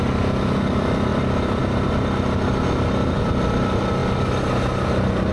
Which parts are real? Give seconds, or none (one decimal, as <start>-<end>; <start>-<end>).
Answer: 0.0-5.3